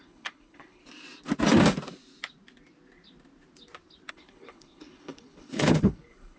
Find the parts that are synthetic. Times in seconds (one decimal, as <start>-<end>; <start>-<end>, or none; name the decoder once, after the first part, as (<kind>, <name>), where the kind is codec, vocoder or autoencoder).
0.0-0.8 (codec, HILCodec); 4.1-6.4